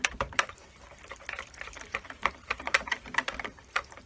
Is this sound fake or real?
fake